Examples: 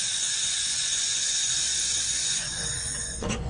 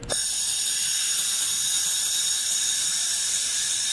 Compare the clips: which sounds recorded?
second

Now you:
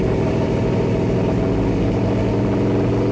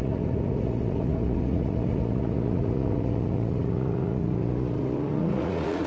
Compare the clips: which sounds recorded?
first